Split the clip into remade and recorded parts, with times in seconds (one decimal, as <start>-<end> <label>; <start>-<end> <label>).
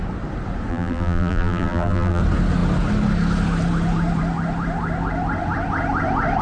0.0-0.7 recorded; 0.7-2.2 remade; 2.2-6.4 recorded